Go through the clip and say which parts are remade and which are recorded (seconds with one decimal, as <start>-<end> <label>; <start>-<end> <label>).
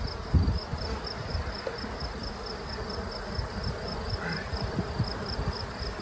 0.0-6.0 recorded